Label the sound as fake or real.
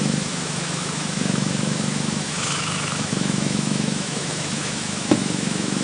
fake